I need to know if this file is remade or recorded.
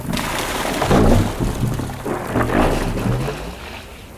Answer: recorded